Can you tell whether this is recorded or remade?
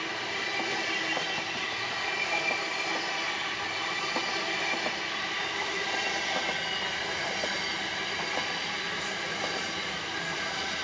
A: recorded